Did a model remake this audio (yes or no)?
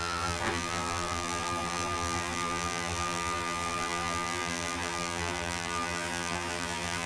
yes